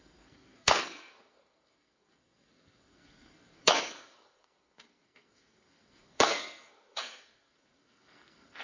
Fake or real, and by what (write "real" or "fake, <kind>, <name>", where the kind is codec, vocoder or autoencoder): fake, codec, SNAC